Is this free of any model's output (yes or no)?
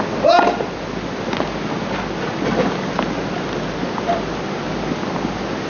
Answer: yes